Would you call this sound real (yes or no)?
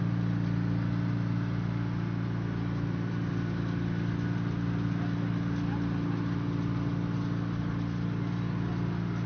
yes